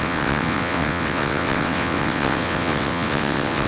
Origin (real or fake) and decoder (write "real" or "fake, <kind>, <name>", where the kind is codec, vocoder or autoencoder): fake, vocoder, WaveNeXt